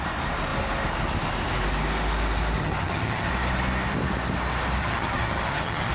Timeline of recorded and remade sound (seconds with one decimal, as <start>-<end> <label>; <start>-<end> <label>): 0.0-2.6 recorded; 2.6-3.3 remade; 3.3-4.8 recorded; 4.8-5.9 remade